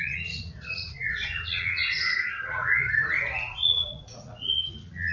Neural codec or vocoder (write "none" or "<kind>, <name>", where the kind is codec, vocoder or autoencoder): vocoder, Vocos